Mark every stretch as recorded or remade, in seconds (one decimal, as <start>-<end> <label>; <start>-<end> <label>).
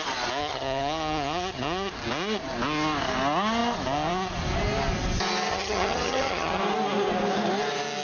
0.0-0.4 recorded; 0.4-1.9 remade; 1.9-5.5 recorded; 5.5-6.6 remade; 6.6-8.0 recorded